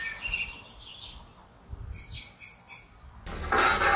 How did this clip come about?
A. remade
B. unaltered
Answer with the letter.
B